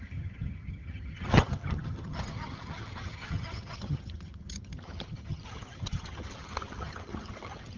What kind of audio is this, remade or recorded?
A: remade